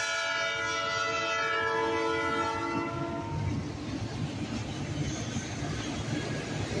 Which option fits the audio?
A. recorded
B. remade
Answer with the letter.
A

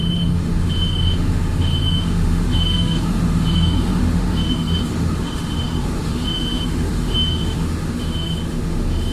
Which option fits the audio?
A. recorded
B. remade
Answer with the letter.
B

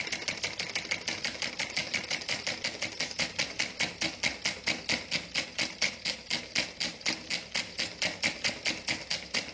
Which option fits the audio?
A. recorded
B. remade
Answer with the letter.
A